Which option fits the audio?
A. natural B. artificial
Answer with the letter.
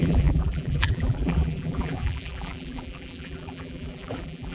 B